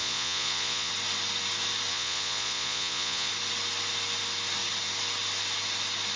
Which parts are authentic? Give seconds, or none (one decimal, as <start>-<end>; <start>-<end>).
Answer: 0.9-1.9; 3.3-6.2